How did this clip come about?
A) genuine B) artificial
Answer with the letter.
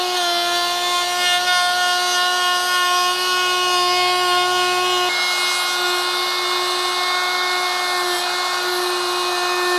A